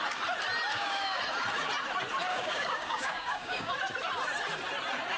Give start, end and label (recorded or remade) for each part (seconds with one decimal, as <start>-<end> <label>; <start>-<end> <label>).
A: 0.0-0.7 recorded; 0.7-1.2 remade; 1.2-2.3 recorded; 2.3-3.7 remade; 3.7-5.2 recorded

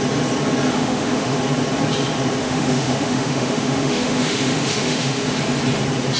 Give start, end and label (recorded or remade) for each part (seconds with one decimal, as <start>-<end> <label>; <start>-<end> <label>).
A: 0.0-0.7 recorded; 0.7-1.4 remade; 1.4-2.4 recorded; 2.4-5.4 remade; 5.4-6.2 recorded

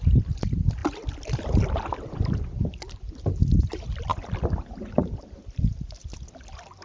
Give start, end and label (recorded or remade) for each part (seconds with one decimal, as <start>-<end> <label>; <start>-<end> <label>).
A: 0.0-6.8 recorded